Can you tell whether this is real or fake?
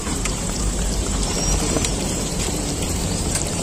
fake